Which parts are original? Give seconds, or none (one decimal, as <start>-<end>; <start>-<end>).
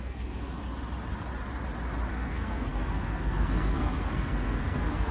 0.6-2.1